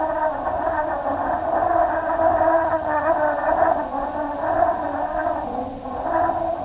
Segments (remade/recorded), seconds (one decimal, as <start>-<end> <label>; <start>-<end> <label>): 0.0-2.6 recorded; 2.6-3.1 remade; 3.1-6.6 recorded

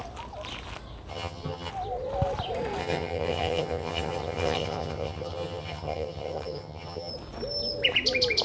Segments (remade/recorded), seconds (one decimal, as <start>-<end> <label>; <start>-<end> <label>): 0.0-1.1 recorded; 1.1-1.7 remade; 1.7-2.8 recorded; 2.8-7.1 remade; 7.1-8.4 recorded

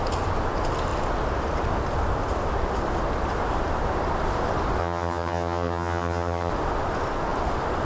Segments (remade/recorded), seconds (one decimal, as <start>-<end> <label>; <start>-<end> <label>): 0.0-4.8 recorded; 4.8-6.5 remade; 6.5-7.8 recorded

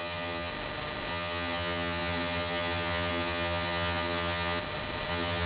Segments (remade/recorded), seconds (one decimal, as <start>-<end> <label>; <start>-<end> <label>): 0.0-0.5 remade; 0.5-1.1 recorded; 1.1-4.6 remade; 4.6-5.1 recorded; 5.1-5.5 remade

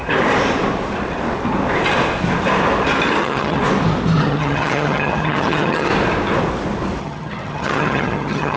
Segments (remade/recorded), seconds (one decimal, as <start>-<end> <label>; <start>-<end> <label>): 0.0-3.2 recorded; 3.2-3.6 remade; 3.6-4.2 recorded; 4.2-5.9 remade; 5.9-7.0 recorded; 7.0-8.6 remade

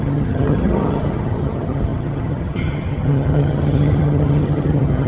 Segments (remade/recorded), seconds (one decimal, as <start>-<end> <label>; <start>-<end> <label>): 0.0-5.1 remade

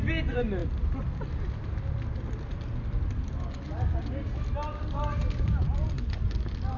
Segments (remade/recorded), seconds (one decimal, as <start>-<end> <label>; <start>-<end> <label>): 0.0-6.8 recorded